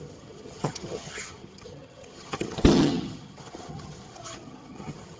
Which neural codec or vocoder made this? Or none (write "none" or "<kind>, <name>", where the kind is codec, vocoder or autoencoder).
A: vocoder, HiFi-GAN